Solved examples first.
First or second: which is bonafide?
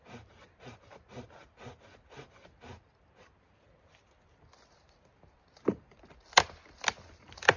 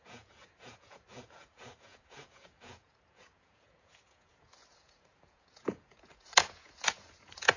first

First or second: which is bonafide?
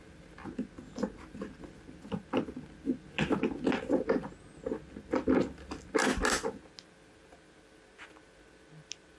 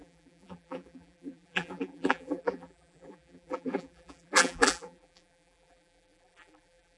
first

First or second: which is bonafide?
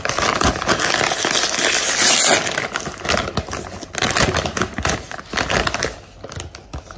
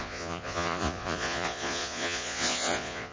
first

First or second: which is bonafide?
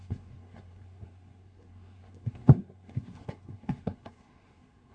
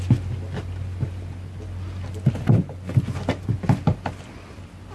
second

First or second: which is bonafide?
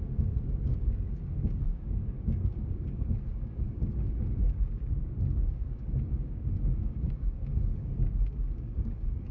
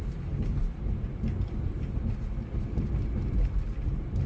second